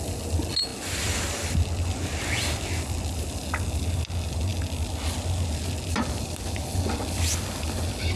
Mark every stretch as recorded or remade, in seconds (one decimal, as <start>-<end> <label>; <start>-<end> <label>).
0.0-8.2 recorded